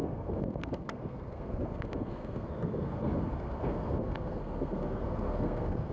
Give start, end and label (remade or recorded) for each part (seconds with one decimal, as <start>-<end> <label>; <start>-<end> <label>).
0.0-5.9 remade